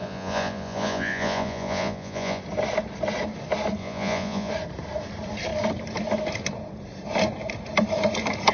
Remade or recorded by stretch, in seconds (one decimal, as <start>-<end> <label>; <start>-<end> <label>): 0.0-2.4 remade; 2.4-3.8 recorded; 3.8-4.5 remade; 4.5-8.5 recorded